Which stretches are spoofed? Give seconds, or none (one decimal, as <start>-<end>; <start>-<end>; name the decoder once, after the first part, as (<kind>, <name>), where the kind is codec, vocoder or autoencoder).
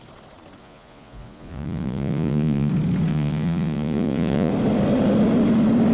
0.6-2.7 (vocoder, Vocos); 3.1-4.5